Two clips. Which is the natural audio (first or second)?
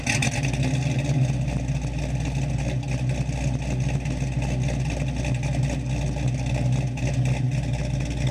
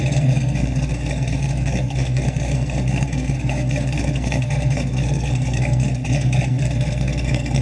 first